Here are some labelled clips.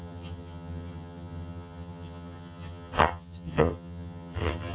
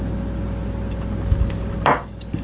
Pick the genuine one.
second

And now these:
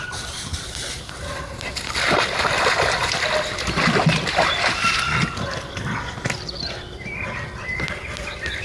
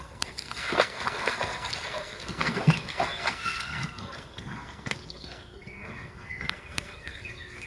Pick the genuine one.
first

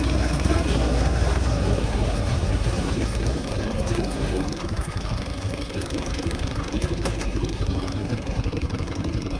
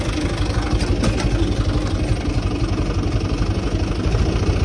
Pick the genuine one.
second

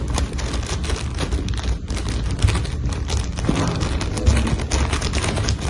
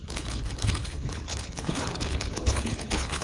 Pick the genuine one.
first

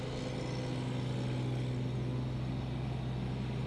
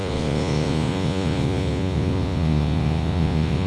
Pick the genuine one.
first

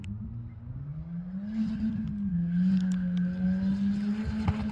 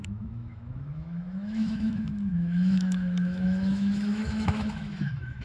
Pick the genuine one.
first